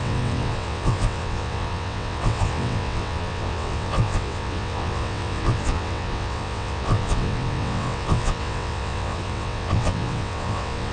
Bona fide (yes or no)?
no